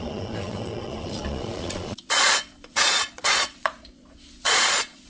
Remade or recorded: remade